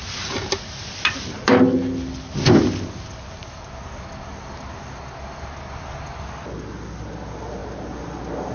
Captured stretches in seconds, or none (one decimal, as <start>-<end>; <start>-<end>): 0.0-8.5

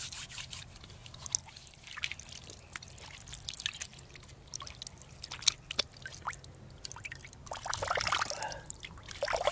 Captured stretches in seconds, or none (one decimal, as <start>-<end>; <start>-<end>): 0.0-9.5

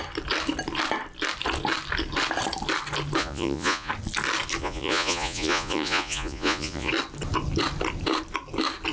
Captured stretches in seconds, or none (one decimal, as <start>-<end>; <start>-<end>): 0.0-3.2; 3.9-4.6; 6.9-8.9

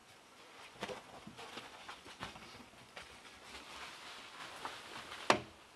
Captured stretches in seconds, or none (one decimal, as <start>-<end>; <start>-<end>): 3.5-5.8

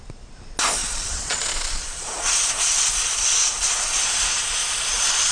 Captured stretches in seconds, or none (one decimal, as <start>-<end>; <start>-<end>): 0.0-0.8; 4.0-4.6